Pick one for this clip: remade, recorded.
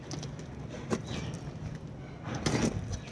recorded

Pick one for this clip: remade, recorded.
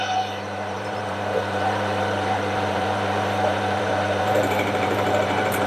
remade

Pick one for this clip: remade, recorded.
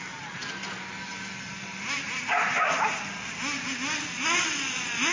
recorded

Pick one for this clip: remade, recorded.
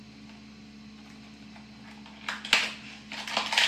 recorded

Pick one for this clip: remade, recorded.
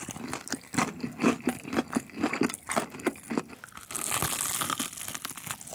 recorded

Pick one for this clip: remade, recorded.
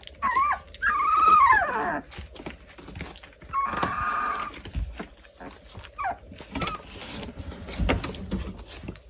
recorded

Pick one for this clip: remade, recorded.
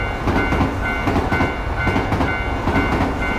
recorded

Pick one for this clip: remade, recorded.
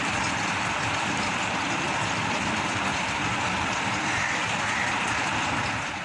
recorded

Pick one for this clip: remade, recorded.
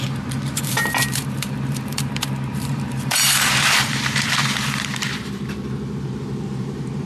remade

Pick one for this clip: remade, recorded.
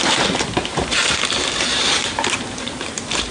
remade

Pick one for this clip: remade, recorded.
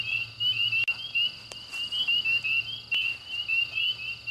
recorded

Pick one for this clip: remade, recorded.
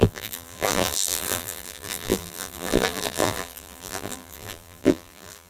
remade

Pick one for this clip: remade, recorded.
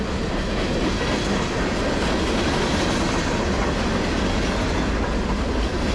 recorded